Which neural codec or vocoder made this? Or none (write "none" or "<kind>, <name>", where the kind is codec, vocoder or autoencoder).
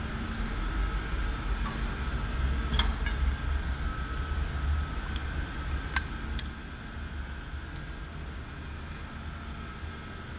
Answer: none